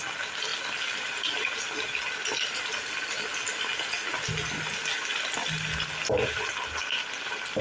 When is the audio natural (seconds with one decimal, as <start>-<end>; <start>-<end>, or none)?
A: 0.0-7.6